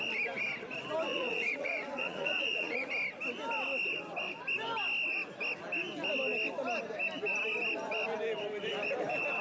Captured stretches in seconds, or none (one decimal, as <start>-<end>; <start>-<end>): 0.0-1.1; 2.9-9.4